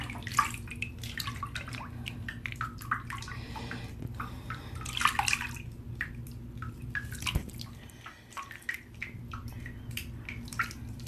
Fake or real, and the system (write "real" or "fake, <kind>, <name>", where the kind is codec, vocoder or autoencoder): real